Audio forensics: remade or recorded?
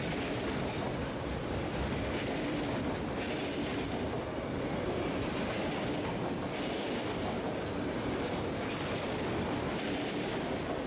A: recorded